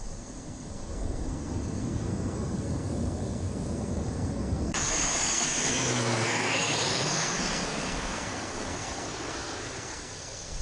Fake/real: fake